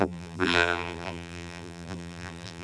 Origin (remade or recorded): remade